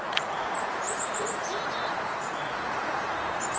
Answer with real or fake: fake